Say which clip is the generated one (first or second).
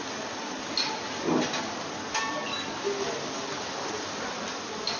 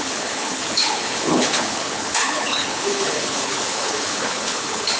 second